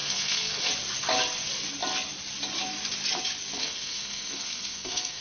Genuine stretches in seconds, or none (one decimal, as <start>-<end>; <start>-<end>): 0.7-3.6